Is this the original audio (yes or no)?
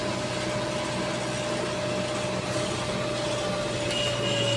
yes